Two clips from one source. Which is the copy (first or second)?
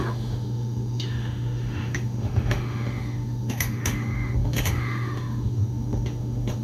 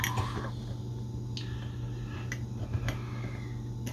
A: first